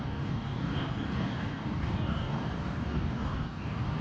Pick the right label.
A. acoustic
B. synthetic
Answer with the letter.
B